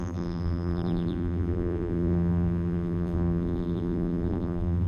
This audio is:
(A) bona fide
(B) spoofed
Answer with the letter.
B